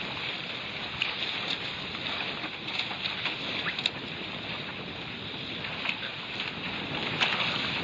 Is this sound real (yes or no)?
yes